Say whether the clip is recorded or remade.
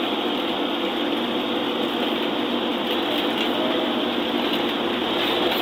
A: recorded